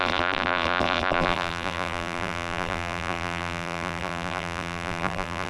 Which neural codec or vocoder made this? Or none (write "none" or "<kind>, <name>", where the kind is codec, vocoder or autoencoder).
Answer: vocoder, BigVGAN v2